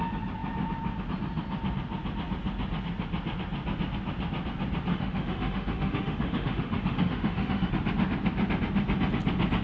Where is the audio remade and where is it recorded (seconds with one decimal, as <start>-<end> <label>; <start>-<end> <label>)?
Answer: 0.0-4.9 recorded; 4.9-7.7 remade; 7.7-9.6 recorded